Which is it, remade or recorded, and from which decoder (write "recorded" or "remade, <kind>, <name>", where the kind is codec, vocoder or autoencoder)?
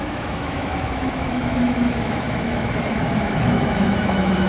remade, autoencoder, DAC-VAE